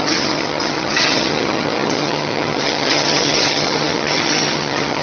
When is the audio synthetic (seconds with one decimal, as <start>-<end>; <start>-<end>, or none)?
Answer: 0.0-5.0